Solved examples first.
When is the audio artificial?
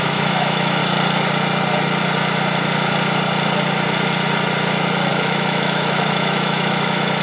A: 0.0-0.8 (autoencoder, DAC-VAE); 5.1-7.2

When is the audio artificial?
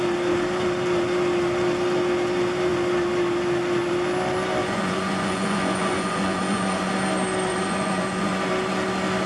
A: 4.6-6.9 (vocoder, Vocos); 7.5-8.5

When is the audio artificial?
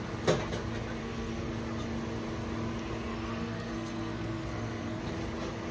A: 1.0-1.5 (codec, SNAC); 3.1-5.0